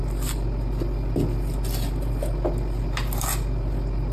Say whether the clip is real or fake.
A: real